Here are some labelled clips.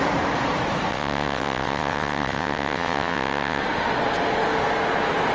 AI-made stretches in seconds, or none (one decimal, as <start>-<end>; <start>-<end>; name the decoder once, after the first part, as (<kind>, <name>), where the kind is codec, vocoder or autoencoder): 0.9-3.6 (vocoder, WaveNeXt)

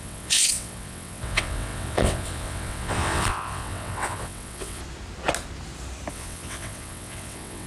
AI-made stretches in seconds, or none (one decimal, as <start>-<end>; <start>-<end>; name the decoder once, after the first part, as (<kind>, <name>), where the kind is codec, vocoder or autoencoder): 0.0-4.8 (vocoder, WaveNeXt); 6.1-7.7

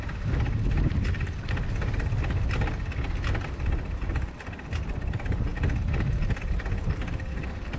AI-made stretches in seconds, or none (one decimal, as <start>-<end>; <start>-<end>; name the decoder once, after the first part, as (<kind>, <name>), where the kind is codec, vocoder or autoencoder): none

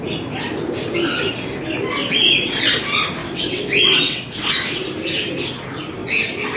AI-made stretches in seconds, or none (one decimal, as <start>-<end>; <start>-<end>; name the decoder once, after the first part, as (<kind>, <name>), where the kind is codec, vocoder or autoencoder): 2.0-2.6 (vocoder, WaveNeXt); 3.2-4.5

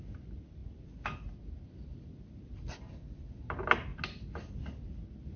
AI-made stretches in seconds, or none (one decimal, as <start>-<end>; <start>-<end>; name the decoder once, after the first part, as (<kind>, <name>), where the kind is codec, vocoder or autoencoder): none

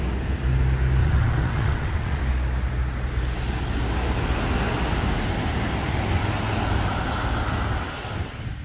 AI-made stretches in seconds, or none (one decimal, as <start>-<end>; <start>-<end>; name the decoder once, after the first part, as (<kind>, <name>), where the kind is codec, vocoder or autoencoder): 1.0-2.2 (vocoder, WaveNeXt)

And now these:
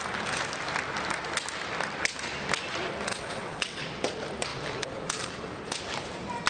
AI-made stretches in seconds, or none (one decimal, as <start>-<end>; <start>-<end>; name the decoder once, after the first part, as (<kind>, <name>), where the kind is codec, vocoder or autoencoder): 3.1-3.8 (vocoder, WaveNeXt)